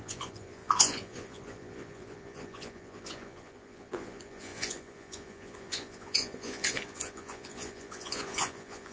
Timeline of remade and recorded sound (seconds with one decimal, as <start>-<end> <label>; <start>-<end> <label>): 0.0-8.9 remade